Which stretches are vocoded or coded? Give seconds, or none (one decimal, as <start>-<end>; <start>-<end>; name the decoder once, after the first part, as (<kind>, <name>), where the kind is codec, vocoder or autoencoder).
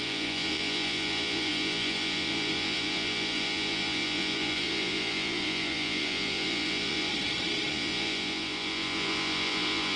0.0-7.1 (vocoder, Vocos); 7.7-10.0